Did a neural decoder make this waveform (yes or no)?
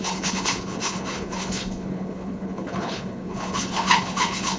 yes